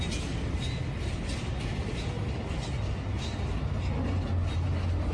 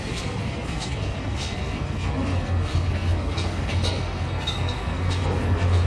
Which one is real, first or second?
first